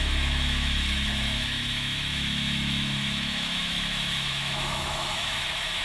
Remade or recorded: remade